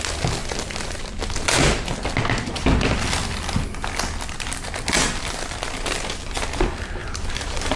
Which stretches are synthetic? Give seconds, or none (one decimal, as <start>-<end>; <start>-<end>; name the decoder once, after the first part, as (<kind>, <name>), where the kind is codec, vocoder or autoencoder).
7.0-7.8 (vocoder, BigVGAN v2)